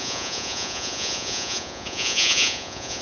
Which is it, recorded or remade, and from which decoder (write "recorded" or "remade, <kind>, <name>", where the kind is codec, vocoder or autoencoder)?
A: remade, vocoder, Vocos